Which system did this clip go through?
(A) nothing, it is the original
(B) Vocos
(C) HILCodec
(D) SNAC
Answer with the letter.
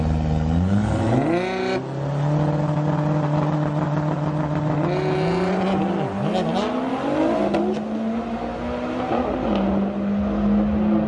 A